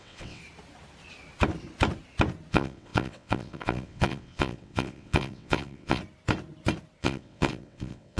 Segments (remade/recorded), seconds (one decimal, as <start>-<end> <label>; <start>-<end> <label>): 0.0-0.4 remade; 0.4-2.5 recorded; 2.5-6.0 remade; 6.0-7.0 recorded; 7.0-8.2 remade